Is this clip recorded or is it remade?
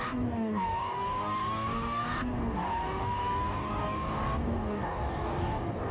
remade